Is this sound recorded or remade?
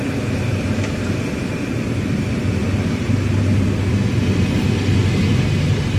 recorded